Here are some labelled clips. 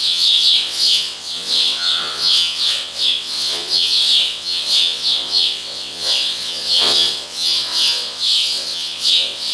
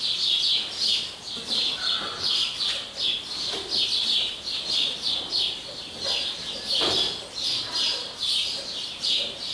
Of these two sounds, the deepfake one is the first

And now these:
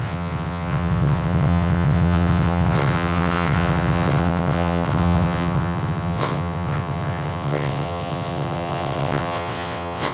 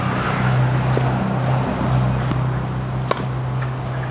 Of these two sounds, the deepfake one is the first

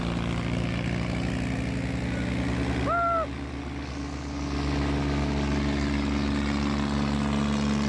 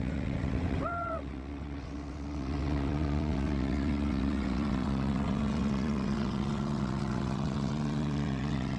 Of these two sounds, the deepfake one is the second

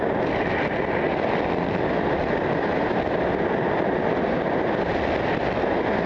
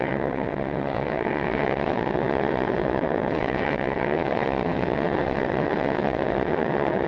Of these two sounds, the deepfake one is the second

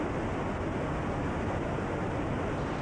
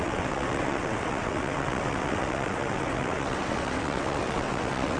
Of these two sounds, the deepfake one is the second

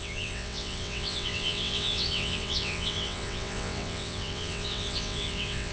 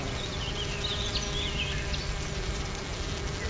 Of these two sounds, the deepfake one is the first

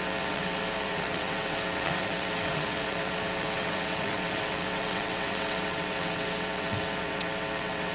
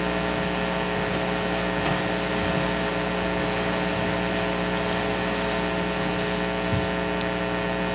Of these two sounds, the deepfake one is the first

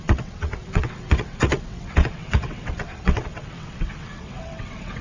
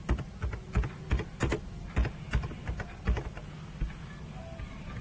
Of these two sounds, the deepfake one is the first